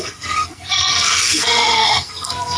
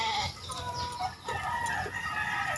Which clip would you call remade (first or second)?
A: first